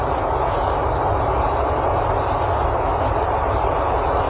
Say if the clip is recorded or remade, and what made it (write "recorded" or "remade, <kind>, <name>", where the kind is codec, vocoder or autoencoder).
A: recorded